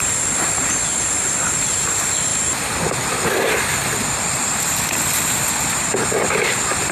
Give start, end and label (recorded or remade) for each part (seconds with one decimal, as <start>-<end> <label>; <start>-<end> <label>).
0.0-6.9 recorded